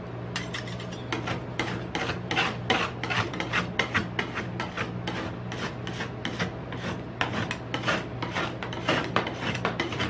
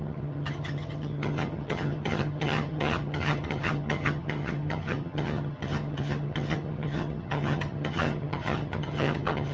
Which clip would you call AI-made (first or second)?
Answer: second